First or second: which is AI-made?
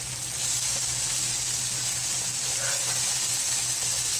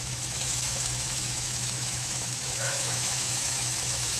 second